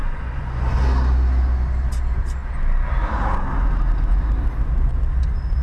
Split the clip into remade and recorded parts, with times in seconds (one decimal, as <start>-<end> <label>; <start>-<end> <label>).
0.0-0.8 remade; 0.8-5.6 recorded

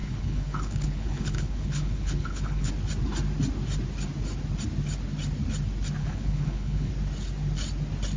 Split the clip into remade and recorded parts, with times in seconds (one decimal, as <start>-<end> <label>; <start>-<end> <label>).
0.0-2.7 remade; 2.7-6.0 recorded; 6.0-6.9 remade; 6.9-8.2 recorded

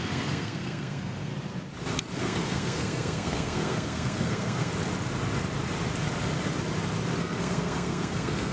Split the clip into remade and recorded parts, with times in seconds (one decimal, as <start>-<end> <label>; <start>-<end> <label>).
0.0-1.3 remade; 1.3-2.2 recorded; 2.2-4.7 remade; 4.7-7.2 recorded; 7.2-8.5 remade